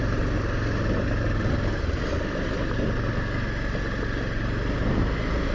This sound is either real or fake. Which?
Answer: real